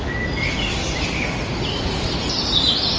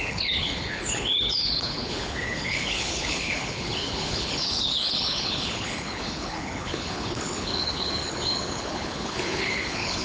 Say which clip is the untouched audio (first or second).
first